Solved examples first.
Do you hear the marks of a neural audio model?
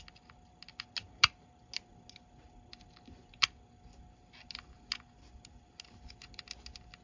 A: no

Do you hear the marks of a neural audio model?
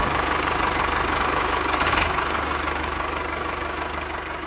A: yes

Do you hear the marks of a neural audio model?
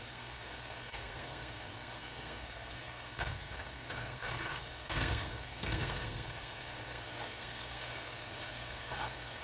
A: yes